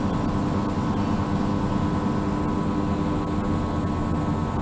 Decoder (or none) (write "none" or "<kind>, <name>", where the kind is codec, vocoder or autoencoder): none